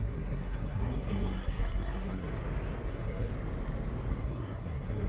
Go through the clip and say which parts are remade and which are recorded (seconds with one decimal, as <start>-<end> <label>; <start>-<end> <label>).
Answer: 0.0-2.3 remade; 2.3-2.9 recorded; 2.9-3.3 remade; 3.3-4.1 recorded; 4.1-5.1 remade